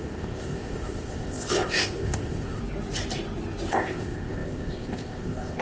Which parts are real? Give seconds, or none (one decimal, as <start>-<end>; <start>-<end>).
2.6-3.7

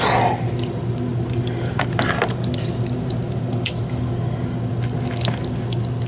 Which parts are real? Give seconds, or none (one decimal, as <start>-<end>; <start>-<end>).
0.0-6.1

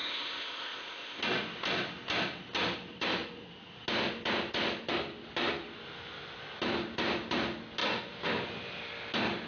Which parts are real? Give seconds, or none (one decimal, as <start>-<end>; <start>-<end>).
1.2-9.5

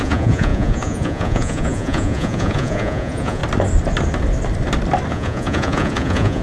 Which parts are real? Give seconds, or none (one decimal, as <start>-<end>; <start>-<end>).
3.4-5.1

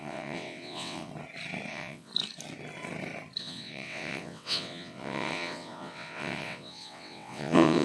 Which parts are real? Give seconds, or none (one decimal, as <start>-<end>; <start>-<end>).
1.1-1.7; 2.1-3.4

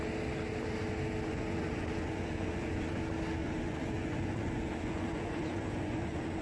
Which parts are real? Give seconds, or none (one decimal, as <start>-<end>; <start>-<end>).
0.0-1.3; 3.0-3.4

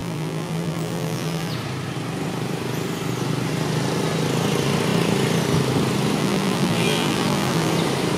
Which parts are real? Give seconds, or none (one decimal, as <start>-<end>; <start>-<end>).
1.5-6.2; 7.7-8.2

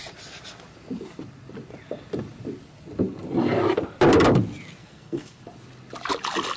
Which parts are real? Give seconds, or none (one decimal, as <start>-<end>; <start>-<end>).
0.0-4.8; 5.4-6.6